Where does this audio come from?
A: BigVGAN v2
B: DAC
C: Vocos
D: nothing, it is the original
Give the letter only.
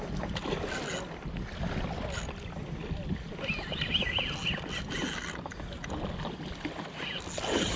D